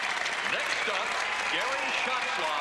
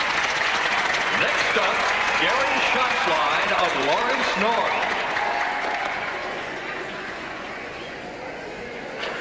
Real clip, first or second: first